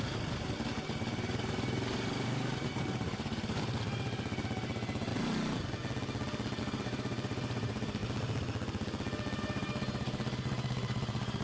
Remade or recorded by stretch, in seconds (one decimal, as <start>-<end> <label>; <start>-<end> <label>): 0.0-5.1 remade; 5.1-6.6 recorded; 6.6-8.0 remade; 8.0-9.4 recorded; 9.4-11.4 remade